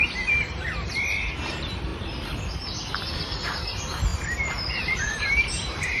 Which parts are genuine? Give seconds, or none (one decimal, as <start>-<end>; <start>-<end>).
0.0-1.9; 2.9-4.1